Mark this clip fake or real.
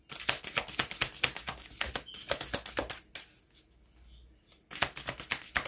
real